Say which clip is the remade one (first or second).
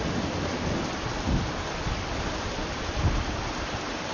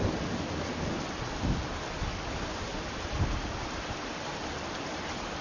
first